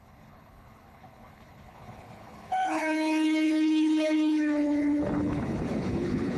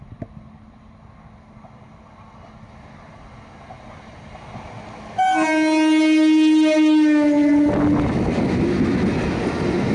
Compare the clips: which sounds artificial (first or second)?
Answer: first